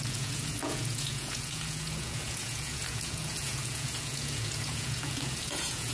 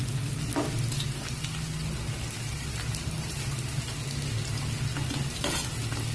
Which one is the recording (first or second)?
second